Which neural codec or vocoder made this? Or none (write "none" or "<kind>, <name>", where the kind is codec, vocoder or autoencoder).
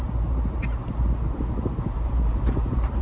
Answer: none